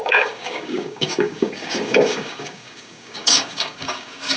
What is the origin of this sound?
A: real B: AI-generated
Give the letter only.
B